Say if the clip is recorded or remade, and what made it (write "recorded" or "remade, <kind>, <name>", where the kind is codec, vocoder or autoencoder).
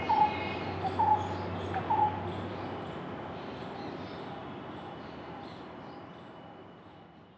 recorded